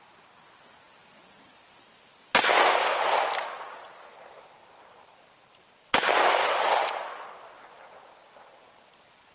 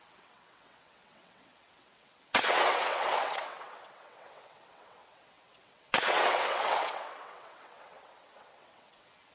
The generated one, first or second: second